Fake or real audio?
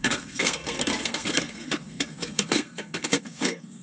fake